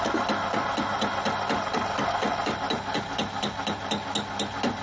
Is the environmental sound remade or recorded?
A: recorded